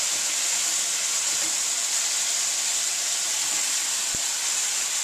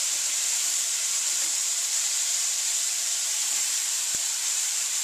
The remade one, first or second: second